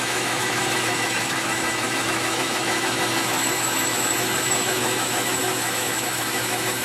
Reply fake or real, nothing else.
fake